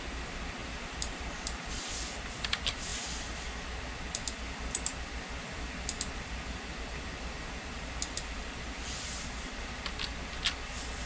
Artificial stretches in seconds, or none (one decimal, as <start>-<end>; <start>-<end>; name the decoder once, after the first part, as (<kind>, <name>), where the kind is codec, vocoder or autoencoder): 0.6-1.2 (vocoder, BigVGAN v2)